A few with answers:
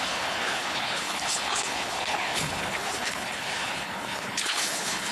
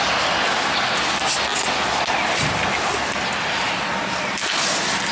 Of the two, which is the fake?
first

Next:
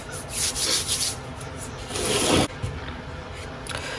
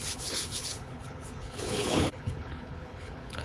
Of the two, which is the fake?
second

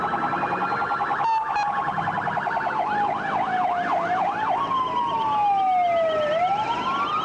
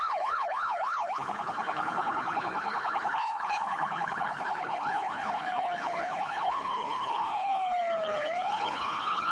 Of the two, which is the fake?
second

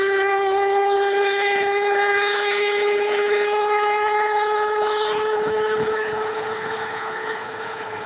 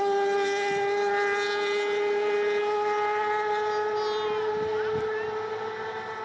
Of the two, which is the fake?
first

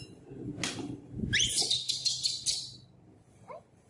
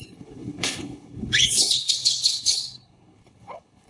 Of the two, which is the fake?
second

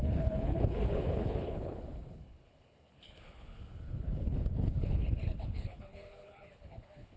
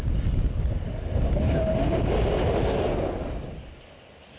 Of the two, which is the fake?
first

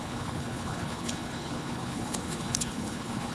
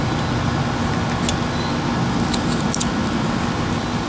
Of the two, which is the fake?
first